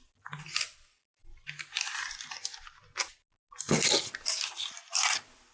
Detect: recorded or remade recorded